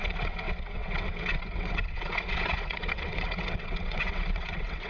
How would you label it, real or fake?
fake